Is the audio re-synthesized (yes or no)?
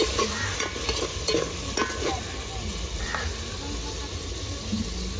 no